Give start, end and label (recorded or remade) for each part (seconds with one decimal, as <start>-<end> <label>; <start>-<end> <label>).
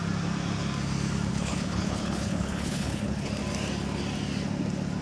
0.0-1.3 recorded; 1.3-3.3 remade; 3.3-5.0 recorded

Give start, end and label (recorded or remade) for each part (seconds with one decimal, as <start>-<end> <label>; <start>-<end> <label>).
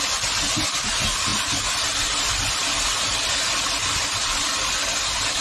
0.0-5.4 recorded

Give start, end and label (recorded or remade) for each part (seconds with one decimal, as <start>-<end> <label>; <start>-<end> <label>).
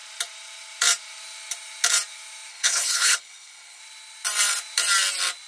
0.0-2.5 recorded; 2.5-3.8 remade; 3.8-5.5 recorded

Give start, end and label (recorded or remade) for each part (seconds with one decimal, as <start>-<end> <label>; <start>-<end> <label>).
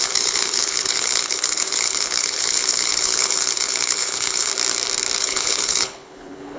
0.0-4.5 remade; 4.5-5.2 recorded; 5.2-6.6 remade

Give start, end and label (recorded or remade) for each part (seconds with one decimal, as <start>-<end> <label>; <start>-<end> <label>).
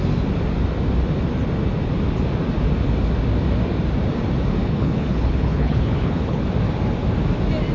0.0-4.6 recorded; 4.6-6.4 remade; 6.4-7.7 recorded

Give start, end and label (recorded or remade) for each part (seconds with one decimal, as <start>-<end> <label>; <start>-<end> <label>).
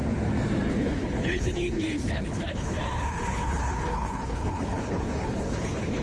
0.0-0.7 recorded; 0.7-6.0 remade